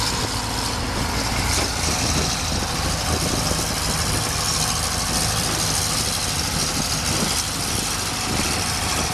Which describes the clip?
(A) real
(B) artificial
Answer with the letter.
A